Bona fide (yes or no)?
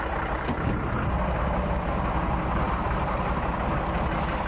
yes